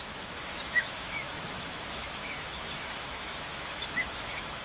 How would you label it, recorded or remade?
remade